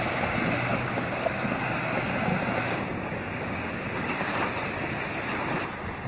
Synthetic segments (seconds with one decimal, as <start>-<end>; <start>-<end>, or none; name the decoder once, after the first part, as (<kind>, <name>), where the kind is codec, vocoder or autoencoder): 0.7-1.9 (codec, DAC); 2.3-4.4